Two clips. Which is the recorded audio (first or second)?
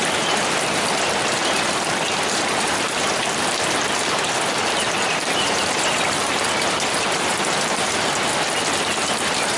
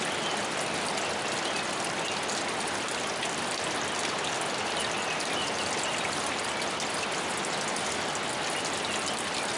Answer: second